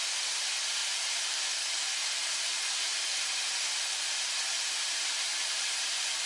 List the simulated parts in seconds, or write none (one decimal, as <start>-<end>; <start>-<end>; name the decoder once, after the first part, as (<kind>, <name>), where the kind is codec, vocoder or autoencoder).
0.8-1.4 (vocoder, BigVGAN v2); 4.8-6.3